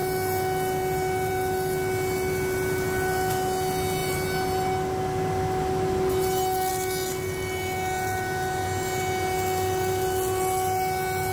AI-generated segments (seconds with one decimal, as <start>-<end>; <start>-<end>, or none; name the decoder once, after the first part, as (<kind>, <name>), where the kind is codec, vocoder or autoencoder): none